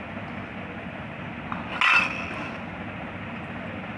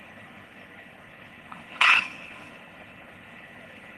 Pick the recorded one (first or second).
first